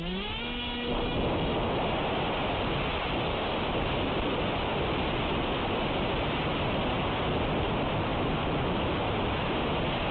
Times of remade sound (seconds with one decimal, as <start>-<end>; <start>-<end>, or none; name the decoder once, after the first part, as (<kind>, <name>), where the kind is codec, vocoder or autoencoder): none